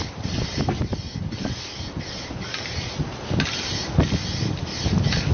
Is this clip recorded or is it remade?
recorded